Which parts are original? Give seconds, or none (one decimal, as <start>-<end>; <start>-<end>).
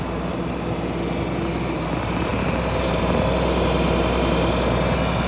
0.0-5.3